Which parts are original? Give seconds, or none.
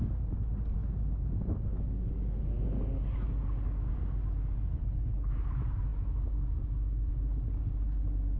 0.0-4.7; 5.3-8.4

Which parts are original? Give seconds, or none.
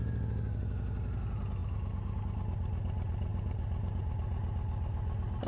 0.0-5.5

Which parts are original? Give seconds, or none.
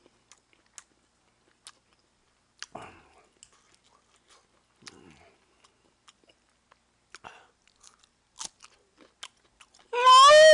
0.0-10.5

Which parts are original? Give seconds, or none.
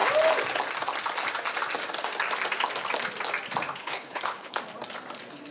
0.0-3.8; 4.6-5.5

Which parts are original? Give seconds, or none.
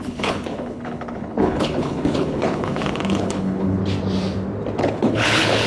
3.8-4.8